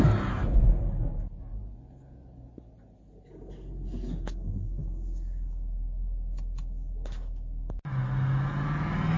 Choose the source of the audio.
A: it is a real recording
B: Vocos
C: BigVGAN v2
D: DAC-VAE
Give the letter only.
A